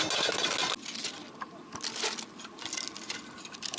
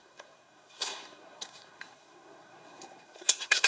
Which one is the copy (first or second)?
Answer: second